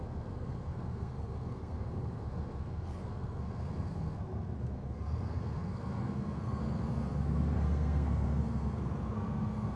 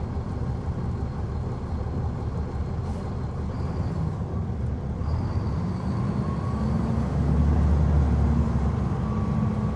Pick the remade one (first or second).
first